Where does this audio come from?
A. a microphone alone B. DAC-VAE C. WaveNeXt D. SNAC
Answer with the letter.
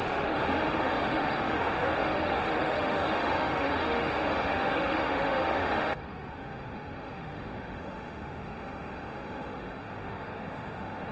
B